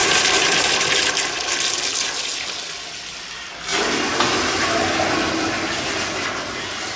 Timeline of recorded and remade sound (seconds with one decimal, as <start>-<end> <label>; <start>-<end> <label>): 0.0-0.8 remade; 0.8-7.0 recorded